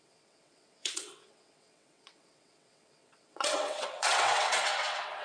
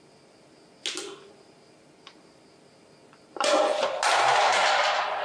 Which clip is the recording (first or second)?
second